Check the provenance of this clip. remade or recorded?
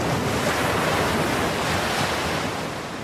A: remade